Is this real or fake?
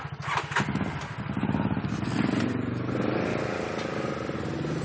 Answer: real